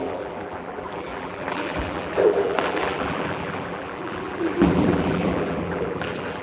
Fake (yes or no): yes